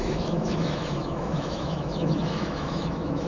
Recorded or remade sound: remade